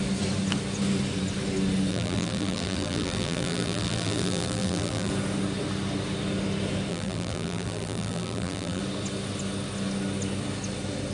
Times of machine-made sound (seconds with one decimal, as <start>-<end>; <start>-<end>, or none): 1.9-5.1; 6.9-8.8